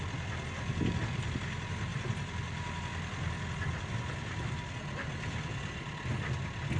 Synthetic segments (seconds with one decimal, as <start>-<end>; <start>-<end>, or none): 1.9-3.9